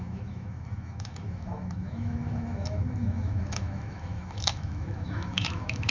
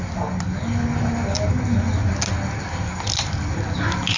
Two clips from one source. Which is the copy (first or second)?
first